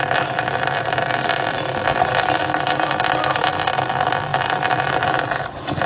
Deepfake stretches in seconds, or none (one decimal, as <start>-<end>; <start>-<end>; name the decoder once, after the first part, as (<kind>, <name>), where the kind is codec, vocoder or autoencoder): none